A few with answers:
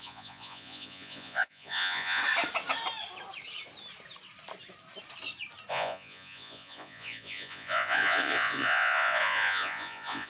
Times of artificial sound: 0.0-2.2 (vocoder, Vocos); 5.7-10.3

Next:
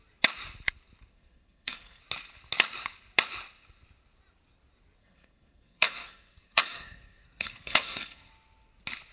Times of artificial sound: 1.1-2.0 (codec, SNAC); 5.0-8.3

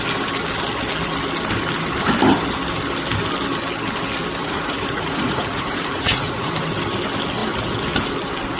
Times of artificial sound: 4.4-6.5 (vocoder, Vocos)

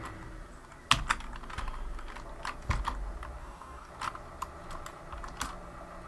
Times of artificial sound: 3.4-3.9 (codec, DAC)

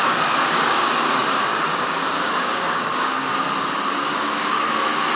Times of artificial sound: 0.0-3.3 (codec, DAC); 3.9-5.2

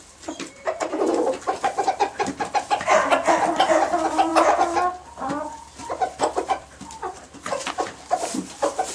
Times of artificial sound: 5.8-7.3 (vocoder, BigVGAN v2)

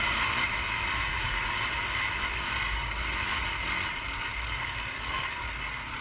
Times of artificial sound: 1.0-1.5 (vocoder, Vocos)

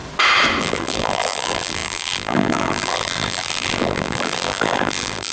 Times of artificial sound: 0.6-5.3 (vocoder, BigVGAN v2)